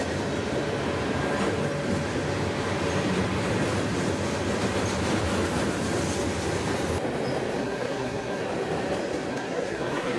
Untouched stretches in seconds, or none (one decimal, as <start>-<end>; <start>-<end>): 0.0-7.6; 8.4-9.3